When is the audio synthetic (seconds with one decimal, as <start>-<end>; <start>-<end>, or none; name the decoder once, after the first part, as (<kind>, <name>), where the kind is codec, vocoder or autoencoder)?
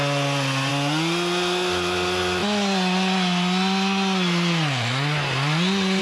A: none